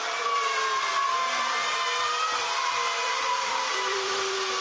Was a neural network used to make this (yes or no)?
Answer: yes